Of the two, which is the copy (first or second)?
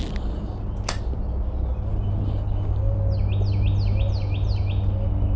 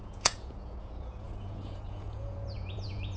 second